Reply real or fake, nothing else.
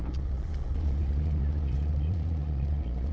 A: fake